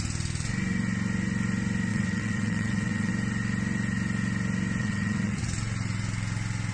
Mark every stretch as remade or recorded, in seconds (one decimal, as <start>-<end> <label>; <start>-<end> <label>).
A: 0.0-1.9 recorded; 1.9-3.1 remade; 3.1-4.8 recorded; 4.8-5.5 remade; 5.5-6.7 recorded